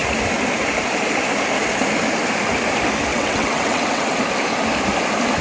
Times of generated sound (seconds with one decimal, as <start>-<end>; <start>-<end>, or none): 3.1-4.2